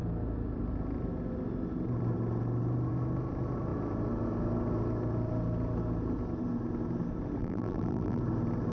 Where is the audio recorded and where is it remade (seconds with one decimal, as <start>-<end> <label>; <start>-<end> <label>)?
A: 0.0-7.4 recorded; 7.4-8.2 remade; 8.2-8.7 recorded

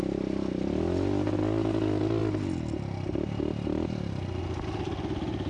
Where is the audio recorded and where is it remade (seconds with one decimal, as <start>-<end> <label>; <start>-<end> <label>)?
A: 0.0-5.5 recorded